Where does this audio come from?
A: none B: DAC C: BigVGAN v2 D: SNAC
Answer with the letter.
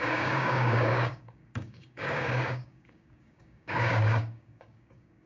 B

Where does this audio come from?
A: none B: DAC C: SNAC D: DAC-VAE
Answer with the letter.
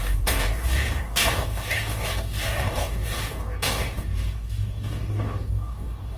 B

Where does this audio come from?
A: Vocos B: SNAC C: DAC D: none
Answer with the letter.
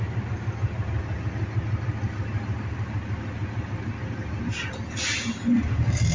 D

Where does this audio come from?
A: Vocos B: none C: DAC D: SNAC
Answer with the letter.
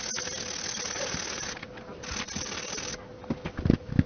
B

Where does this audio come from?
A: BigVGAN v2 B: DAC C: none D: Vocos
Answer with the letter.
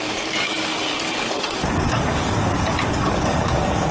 B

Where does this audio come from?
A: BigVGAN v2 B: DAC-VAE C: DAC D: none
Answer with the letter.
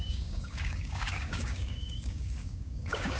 C